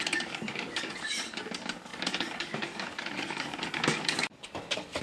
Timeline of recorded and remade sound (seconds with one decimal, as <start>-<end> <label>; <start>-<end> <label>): 0.0-5.0 remade